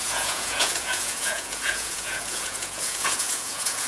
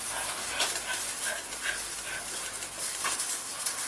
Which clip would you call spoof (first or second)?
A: first